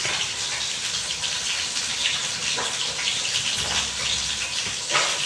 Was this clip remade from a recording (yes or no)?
no